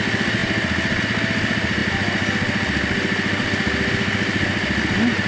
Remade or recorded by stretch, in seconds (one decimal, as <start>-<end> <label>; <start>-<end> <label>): 0.0-5.3 recorded